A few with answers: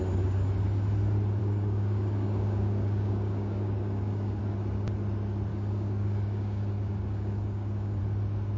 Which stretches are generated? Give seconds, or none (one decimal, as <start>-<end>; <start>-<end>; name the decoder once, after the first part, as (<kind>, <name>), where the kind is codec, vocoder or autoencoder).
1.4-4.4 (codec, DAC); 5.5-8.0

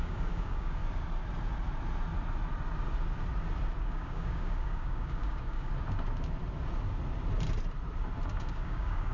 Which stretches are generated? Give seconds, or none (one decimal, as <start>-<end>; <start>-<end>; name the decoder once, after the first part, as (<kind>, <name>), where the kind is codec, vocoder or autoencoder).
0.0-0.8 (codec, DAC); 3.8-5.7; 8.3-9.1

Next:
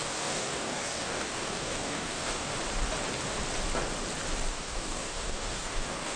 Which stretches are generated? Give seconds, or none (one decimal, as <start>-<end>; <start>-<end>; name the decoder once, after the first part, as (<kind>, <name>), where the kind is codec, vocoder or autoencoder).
0.0-2.5 (codec, DAC); 4.5-6.2

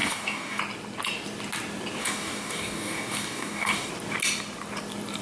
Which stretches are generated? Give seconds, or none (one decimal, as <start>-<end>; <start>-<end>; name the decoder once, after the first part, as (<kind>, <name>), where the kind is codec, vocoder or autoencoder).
0.0-0.6 (codec, DAC); 2.0-3.9

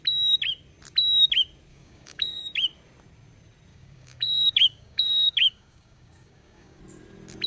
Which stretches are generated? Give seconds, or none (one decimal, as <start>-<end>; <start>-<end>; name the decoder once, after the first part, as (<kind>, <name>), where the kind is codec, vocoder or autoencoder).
1.7-2.4 (codec, DAC); 3.7-6.8

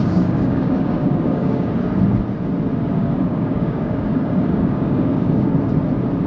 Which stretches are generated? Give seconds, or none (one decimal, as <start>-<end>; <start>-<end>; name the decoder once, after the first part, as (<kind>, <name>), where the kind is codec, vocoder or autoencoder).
0.0-1.7 (codec, DAC); 3.0-5.5

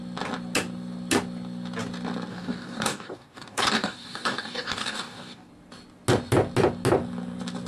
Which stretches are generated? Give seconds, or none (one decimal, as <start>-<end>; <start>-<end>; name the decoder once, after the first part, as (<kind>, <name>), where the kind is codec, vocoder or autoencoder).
2.3-5.5 (codec, DAC)

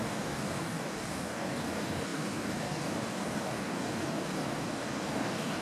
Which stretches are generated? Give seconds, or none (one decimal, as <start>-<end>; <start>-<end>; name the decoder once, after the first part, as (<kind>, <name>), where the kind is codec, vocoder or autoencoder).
0.0-5.6 (codec, DAC)